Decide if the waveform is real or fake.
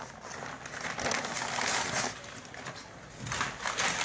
real